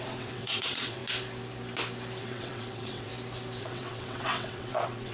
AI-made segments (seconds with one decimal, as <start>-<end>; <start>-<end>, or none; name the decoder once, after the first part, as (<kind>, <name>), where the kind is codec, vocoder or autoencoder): 0.0-1.0 (vocoder, WaveNeXt); 2.2-3.1; 3.6-5.1

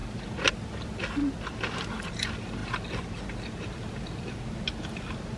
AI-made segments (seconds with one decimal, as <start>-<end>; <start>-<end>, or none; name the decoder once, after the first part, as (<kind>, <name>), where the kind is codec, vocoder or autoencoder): none

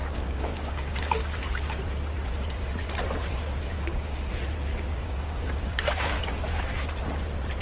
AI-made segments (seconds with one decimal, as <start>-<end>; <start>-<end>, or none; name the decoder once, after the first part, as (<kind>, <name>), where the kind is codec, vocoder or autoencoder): 0.0-1.8 (codec, DAC); 3.7-4.3; 4.7-6.6

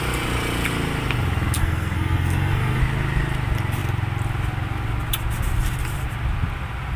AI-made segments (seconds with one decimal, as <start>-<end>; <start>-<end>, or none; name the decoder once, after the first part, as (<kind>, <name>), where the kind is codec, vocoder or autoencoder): 1.6-2.8 (codec, SNAC)

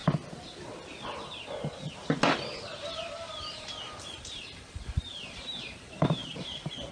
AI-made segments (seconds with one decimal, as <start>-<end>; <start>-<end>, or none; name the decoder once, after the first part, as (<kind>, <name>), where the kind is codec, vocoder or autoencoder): 4.1-6.2 (vocoder, BigVGAN v2)

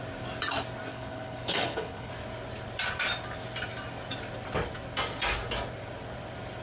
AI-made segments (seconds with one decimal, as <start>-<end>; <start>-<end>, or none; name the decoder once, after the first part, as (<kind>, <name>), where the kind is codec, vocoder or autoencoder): 0.9-2.1 (codec, HILCodec)

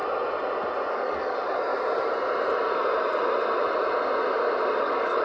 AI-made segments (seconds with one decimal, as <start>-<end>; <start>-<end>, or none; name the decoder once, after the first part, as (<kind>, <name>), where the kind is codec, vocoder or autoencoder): 0.9-1.7 (codec, DAC); 4.8-5.2

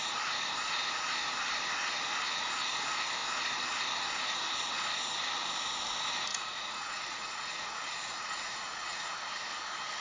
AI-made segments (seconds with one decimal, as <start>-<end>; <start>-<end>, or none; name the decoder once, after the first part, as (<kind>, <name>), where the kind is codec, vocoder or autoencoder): 6.3-9.1 (vocoder, Vocos)